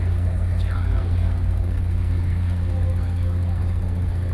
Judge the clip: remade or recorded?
remade